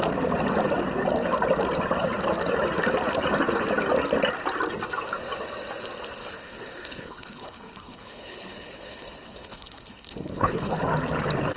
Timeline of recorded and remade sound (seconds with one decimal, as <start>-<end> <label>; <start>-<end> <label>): 0.0-6.2 recorded; 6.2-10.8 remade; 10.8-11.6 recorded